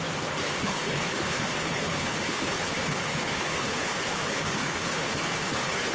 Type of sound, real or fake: fake